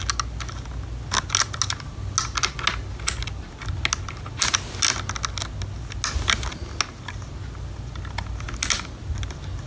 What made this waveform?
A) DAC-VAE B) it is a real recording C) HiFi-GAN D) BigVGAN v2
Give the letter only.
B